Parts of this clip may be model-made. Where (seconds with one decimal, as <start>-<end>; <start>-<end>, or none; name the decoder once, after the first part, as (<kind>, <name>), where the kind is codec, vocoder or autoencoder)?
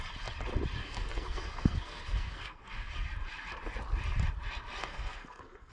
0.8-2.9 (codec, SNAC); 4.8-5.7